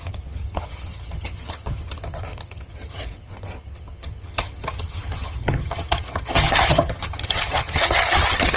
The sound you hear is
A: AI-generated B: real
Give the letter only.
A